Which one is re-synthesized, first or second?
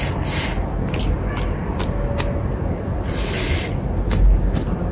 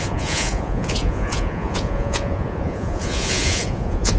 second